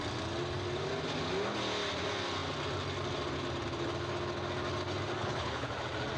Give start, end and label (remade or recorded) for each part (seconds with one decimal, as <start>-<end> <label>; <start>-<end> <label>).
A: 0.0-5.2 recorded; 5.2-5.7 remade; 5.7-6.2 recorded